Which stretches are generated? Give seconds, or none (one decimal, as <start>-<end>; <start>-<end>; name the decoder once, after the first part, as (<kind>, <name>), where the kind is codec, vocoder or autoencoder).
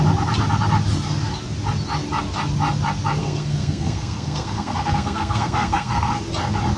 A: 3.2-6.2 (codec, SNAC)